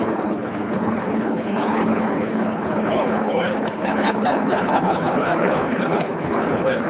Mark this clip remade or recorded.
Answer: remade